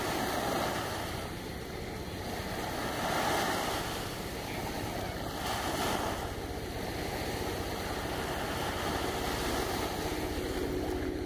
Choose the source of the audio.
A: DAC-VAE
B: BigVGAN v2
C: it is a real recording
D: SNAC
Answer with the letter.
C